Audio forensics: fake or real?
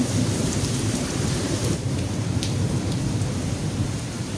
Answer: fake